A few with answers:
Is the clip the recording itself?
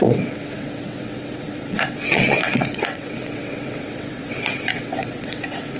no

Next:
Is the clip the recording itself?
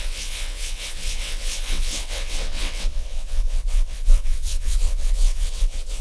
no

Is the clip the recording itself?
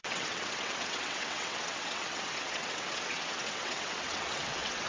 no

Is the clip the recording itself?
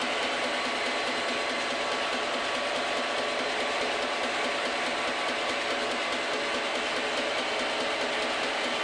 yes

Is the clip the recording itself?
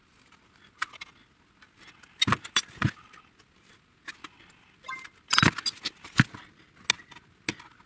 yes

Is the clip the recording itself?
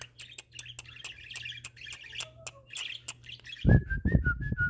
yes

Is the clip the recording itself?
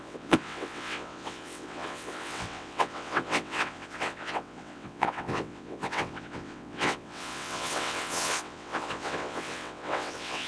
no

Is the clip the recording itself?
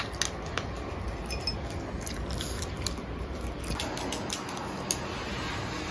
yes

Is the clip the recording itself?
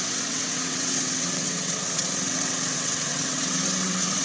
no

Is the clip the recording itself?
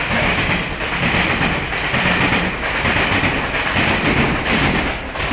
yes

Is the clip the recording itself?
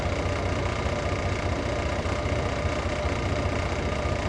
yes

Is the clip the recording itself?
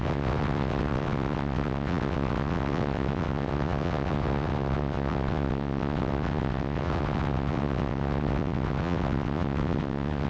no